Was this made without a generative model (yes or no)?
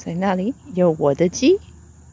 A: yes